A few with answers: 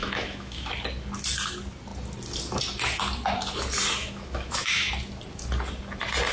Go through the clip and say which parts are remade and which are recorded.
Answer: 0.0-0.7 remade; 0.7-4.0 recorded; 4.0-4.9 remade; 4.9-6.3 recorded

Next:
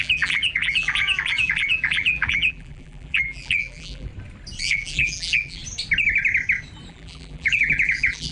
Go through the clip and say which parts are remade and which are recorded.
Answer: 0.0-4.1 remade; 4.1-4.6 recorded; 4.6-5.6 remade; 5.6-6.9 recorded; 6.9-8.3 remade

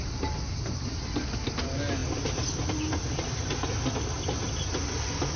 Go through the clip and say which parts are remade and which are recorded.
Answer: 0.0-5.4 recorded